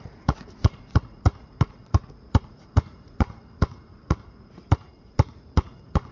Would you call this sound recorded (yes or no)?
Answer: no